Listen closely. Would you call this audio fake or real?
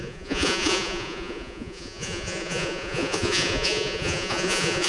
fake